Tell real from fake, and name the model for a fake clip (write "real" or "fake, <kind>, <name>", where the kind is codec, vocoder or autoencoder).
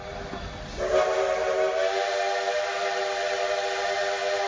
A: real